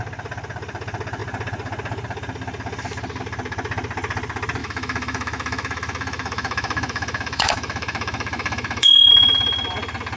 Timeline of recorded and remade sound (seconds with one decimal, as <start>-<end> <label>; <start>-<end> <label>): 0.0-4.6 recorded; 4.6-9.1 remade; 9.1-10.2 recorded